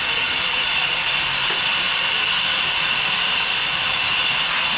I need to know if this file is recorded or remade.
remade